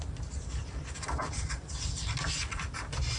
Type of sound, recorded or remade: recorded